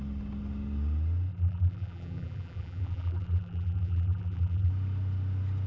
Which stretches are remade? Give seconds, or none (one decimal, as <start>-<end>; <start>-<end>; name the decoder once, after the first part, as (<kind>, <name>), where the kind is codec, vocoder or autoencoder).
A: 1.3-4.7 (vocoder, BigVGAN v2)